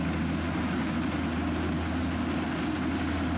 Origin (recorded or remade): recorded